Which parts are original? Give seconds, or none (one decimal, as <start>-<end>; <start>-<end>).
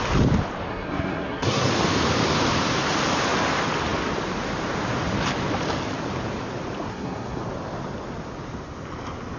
0.0-0.7; 1.7-6.9; 7.4-9.4